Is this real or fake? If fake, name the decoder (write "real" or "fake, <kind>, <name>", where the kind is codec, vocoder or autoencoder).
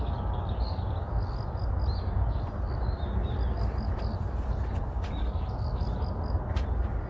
real